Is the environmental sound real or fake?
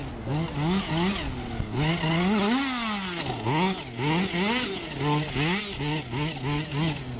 real